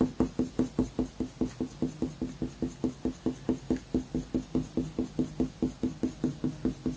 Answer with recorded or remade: recorded